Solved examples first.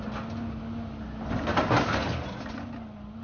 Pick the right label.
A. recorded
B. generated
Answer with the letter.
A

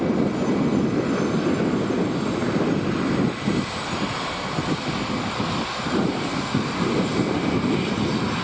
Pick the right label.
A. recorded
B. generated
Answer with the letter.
A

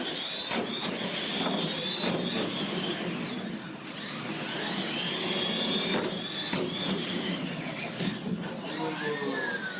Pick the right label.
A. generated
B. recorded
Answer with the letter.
B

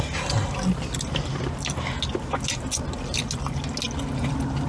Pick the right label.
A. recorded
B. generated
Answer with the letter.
A